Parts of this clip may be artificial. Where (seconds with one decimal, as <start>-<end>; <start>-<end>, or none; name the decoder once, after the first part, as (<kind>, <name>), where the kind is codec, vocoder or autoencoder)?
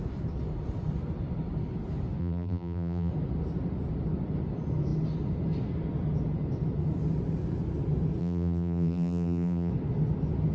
2.2-3.1 (vocoder, BigVGAN v2); 8.2-9.7